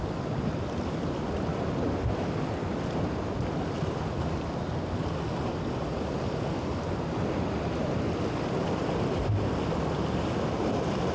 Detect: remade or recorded recorded